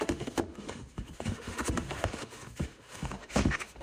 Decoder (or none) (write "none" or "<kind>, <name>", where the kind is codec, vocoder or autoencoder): autoencoder, DAC-VAE